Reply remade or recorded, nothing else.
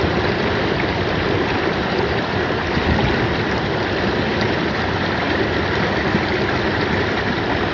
remade